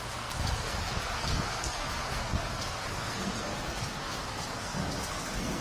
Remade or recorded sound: remade